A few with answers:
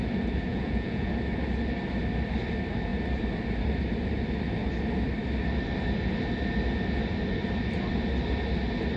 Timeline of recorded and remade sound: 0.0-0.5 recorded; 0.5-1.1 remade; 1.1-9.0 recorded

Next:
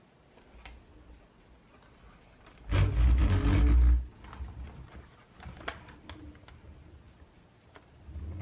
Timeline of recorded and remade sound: 0.0-8.4 recorded

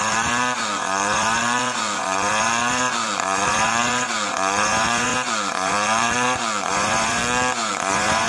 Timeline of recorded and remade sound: 0.0-7.2 remade; 7.2-7.7 recorded; 7.7-8.3 remade

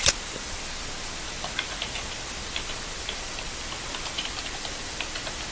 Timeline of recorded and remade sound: 0.0-5.5 recorded